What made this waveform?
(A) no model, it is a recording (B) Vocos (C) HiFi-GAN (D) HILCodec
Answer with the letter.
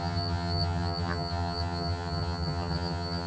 C